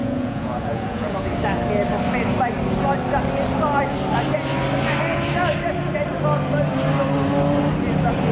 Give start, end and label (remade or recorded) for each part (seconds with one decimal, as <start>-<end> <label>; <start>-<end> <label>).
0.0-1.3 remade; 1.3-8.3 recorded